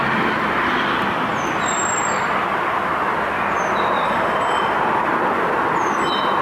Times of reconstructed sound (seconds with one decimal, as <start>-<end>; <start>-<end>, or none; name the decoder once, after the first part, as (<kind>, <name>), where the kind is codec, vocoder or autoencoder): none